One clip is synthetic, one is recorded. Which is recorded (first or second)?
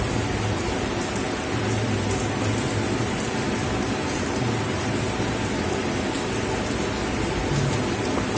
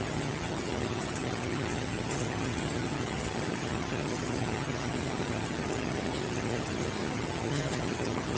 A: first